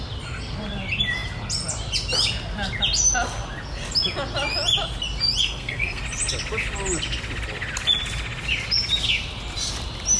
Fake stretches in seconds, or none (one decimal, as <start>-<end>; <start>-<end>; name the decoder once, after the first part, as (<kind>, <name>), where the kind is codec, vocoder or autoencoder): 5.4-6.0 (codec, SNAC)